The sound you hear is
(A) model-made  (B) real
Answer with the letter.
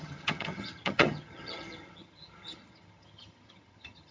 A